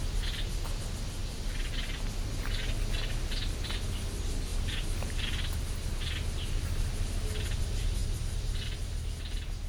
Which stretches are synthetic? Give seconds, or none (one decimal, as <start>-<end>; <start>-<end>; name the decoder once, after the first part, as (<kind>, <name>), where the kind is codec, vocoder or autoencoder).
1.2-1.7 (vocoder, BigVGAN v2); 4.5-6.0